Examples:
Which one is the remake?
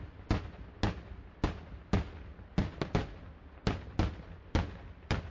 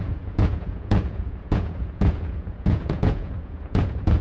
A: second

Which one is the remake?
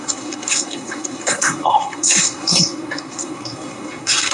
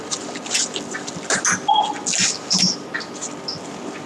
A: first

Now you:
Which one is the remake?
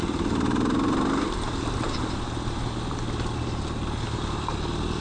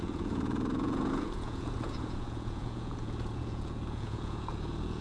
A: second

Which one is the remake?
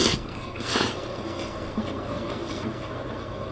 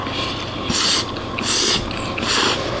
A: first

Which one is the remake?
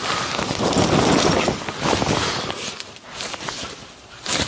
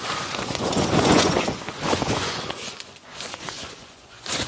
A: second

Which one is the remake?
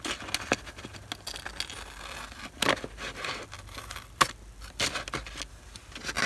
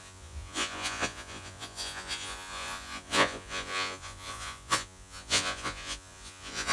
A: second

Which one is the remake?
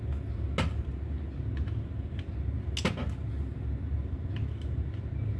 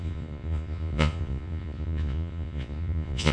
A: second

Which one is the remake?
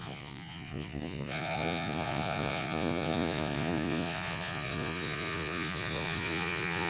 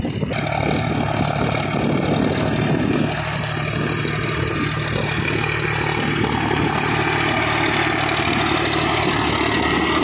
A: first